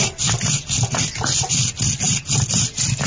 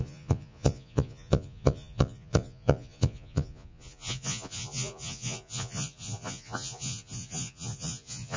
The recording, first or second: first